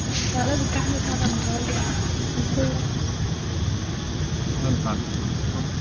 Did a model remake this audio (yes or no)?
no